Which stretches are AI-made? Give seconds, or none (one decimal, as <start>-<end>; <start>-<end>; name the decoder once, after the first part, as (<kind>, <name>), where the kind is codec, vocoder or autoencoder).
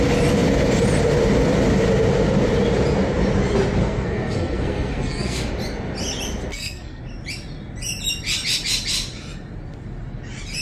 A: 3.8-5.5 (codec, SNAC); 6.5-7.0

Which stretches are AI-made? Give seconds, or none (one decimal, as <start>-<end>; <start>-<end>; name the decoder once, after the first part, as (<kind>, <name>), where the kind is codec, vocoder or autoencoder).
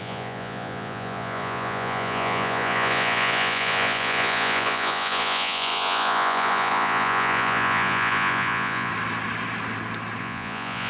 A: 0.0-8.9 (vocoder, Vocos); 10.2-10.9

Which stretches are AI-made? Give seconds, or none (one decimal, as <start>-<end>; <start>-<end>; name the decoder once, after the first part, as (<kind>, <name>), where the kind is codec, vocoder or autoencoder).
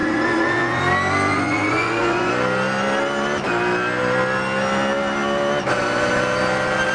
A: 0.0-0.8 (vocoder, Vocos); 1.3-2.3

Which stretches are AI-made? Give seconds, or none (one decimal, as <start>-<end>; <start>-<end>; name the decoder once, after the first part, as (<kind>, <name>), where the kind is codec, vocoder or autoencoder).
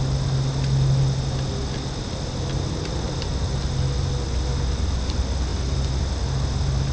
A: none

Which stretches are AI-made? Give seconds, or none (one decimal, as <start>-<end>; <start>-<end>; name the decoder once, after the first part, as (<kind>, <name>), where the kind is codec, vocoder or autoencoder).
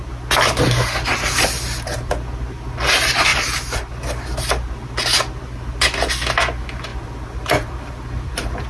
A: 1.1-2.1 (vocoder, BigVGAN v2); 3.3-3.9; 6.9-8.7